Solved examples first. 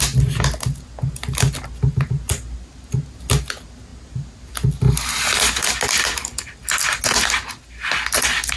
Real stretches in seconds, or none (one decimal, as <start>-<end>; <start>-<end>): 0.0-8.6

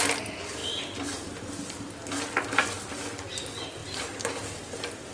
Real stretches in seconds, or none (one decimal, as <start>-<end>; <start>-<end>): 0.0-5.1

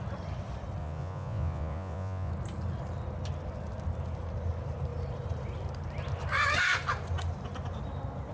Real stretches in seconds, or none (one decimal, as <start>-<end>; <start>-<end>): 0.0-0.8; 2.3-8.3

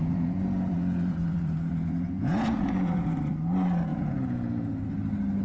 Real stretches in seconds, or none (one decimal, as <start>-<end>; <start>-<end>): 3.2-3.9; 4.8-5.4

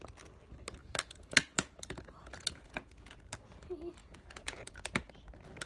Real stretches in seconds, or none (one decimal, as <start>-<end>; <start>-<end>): 0.0-0.8; 3.2-4.0; 5.1-5.7

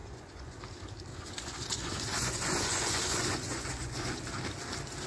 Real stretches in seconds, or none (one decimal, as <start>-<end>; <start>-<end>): 0.6-1.1; 4.2-5.1